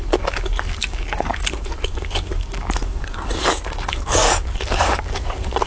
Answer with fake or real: fake